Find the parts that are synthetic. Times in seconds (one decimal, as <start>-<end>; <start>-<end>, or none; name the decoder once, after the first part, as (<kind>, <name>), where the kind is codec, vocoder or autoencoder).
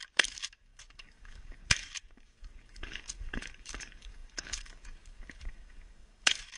0.0-6.6 (codec, DAC)